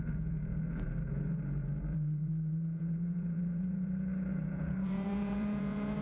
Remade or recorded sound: remade